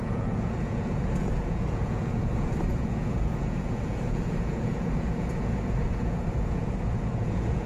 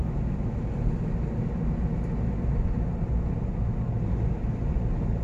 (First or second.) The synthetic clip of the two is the first